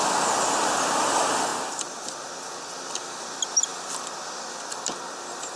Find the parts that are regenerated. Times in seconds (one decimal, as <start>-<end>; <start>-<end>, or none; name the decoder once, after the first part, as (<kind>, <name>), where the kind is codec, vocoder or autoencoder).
none